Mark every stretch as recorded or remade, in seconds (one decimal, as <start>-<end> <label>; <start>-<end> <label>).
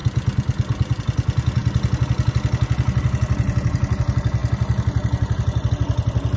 0.0-6.4 recorded